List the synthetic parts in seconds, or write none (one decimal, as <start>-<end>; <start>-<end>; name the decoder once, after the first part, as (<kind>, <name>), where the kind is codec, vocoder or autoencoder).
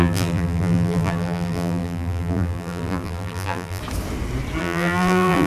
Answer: 0.0-3.8 (vocoder, BigVGAN v2); 4.6-5.5